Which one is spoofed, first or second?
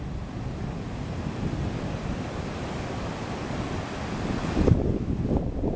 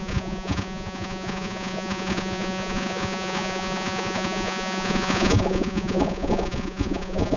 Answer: second